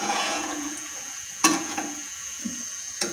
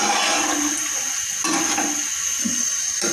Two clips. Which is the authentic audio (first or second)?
second